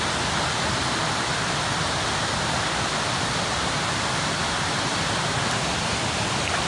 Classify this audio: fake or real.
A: real